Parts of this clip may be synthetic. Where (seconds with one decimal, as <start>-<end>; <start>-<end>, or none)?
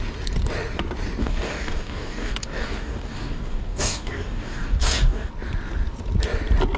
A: 1.2-5.3